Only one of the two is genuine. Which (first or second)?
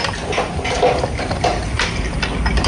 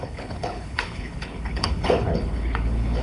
first